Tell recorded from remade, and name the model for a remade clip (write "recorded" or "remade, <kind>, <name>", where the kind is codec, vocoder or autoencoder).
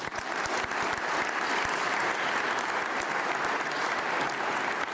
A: recorded